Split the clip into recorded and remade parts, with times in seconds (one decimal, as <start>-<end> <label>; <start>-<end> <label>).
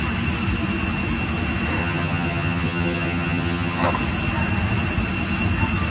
0.0-1.8 recorded; 1.8-3.9 remade; 3.9-5.9 recorded